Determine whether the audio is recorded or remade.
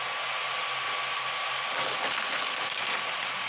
recorded